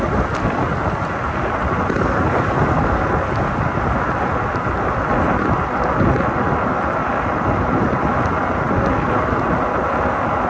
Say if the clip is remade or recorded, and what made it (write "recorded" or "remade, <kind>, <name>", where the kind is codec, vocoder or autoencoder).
recorded